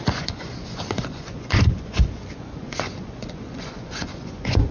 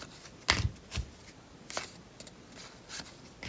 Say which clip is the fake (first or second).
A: first